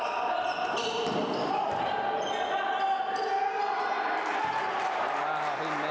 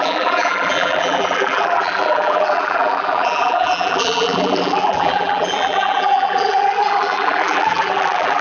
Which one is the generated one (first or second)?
second